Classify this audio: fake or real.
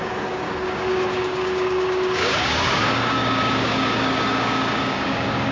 fake